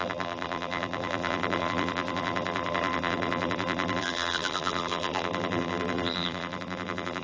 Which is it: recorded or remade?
remade